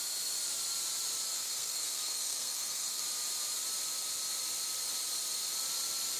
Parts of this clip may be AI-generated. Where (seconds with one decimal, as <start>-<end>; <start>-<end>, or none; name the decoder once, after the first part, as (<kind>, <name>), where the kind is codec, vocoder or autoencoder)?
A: 1.3-3.0 (codec, SNAC)

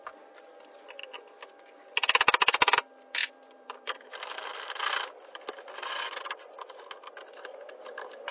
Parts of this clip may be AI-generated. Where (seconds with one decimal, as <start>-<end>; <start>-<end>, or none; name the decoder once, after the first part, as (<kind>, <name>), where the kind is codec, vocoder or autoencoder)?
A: 3.2-6.6 (vocoder, BigVGAN v2)

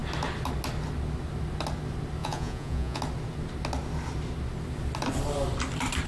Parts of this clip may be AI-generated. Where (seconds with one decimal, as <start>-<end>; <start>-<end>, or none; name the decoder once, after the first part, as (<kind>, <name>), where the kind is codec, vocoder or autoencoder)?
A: 2.2-3.0 (vocoder, Vocos)

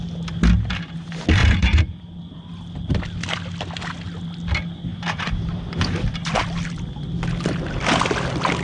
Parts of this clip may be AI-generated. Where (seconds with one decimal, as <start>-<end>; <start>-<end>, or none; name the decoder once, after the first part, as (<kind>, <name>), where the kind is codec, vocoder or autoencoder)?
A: 1.4-2.2 (vocoder, BigVGAN v2); 4.9-5.7

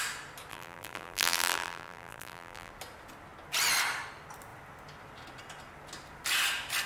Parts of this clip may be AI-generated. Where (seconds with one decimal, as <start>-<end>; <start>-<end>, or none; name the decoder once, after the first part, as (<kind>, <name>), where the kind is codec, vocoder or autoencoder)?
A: 0.5-2.7 (vocoder, BigVGAN v2)

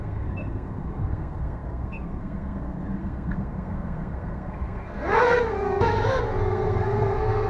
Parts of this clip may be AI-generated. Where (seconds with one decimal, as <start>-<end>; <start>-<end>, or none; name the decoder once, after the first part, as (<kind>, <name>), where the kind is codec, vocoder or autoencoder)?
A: 0.0-7.5 (codec, SNAC)

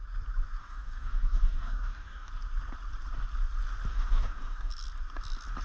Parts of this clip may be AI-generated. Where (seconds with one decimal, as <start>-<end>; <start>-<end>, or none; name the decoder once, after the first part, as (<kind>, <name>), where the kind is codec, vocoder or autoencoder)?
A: 0.6-2.3 (codec, DAC); 3.9-4.7